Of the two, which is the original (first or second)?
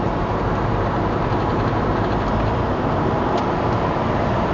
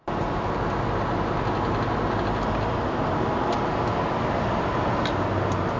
second